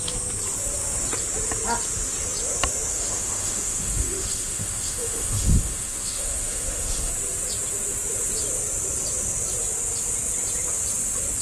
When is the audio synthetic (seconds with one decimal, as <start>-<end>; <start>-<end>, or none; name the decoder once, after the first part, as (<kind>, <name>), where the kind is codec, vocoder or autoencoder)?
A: 2.9-7.1 (autoencoder, DAC-VAE)